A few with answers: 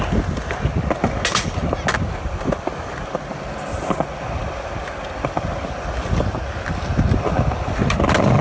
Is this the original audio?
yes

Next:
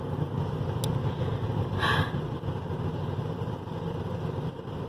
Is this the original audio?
yes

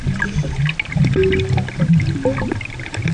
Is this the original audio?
yes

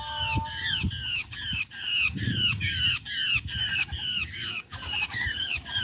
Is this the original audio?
no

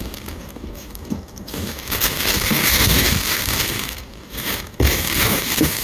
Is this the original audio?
no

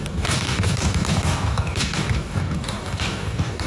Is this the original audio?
no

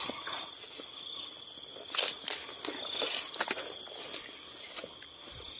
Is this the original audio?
yes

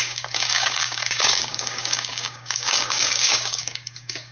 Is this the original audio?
no